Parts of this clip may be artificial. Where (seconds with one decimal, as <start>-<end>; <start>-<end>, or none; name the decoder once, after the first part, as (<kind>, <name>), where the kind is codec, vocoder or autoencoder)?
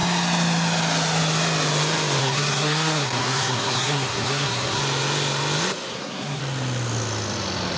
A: 2.2-4.8 (codec, SNAC); 5.9-6.4